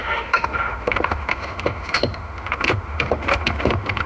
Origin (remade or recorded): remade